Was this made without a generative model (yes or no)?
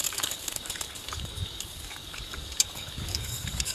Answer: no